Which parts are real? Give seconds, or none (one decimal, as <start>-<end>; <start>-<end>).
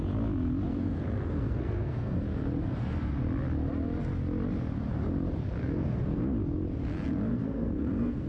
0.0-0.7; 2.2-5.6; 6.2-7.3